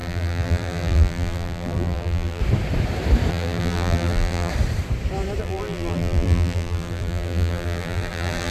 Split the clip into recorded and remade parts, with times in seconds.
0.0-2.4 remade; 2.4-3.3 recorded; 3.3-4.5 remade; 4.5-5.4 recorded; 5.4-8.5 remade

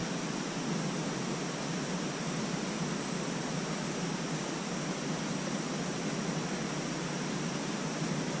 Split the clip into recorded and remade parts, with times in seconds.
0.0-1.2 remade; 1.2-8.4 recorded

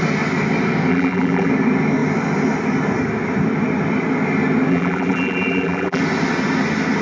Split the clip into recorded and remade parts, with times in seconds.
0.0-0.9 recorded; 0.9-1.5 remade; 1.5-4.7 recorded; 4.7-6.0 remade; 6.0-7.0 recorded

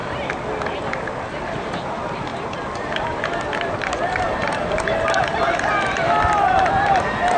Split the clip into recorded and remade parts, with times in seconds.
0.0-1.3 recorded; 1.3-2.3 remade; 2.3-3.7 recorded; 3.7-7.4 remade

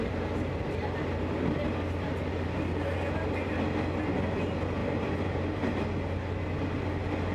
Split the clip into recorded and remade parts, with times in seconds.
0.0-4.8 recorded; 4.8-5.7 remade; 5.7-7.3 recorded